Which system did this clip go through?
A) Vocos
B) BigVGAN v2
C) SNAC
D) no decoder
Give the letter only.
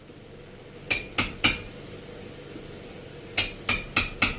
D